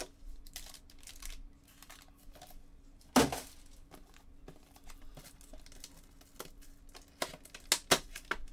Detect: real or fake real